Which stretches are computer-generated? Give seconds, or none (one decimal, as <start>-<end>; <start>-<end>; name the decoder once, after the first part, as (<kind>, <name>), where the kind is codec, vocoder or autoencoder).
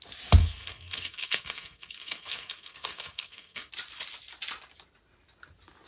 0.4-3.7 (codec, SNAC)